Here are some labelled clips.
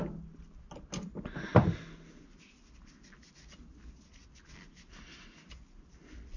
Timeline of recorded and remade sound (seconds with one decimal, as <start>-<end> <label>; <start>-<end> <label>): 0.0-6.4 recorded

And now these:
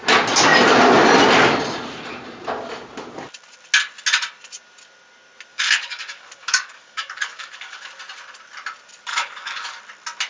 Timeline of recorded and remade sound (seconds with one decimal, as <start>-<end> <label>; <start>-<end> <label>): 0.0-5.5 recorded; 5.5-7.9 remade; 7.9-9.1 recorded; 9.1-9.8 remade; 9.8-10.3 recorded

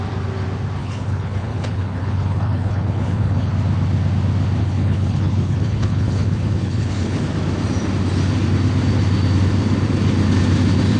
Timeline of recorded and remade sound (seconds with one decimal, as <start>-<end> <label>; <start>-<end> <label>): 0.0-0.8 recorded; 0.8-3.5 remade; 3.5-4.6 recorded; 4.6-7.2 remade; 7.2-11.0 recorded

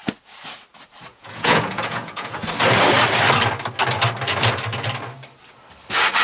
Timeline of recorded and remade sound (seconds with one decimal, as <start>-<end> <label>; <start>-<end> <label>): 0.0-1.1 recorded; 1.1-2.4 remade; 2.4-6.2 recorded

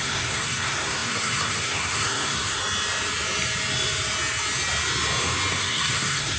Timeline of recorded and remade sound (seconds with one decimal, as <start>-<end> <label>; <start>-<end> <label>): 0.0-2.6 remade; 2.6-5.5 recorded; 5.5-6.4 remade